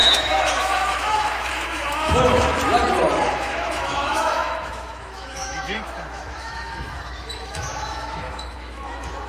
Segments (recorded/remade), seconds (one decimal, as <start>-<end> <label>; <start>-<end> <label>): 0.0-2.5 remade; 2.5-3.3 recorded; 3.3-9.3 remade